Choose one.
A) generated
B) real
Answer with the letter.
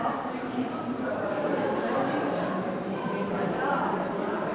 A